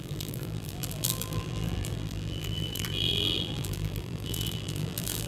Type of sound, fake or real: fake